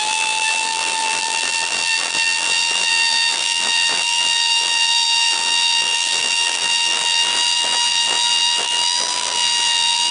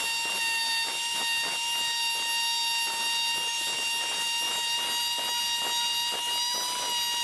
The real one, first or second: second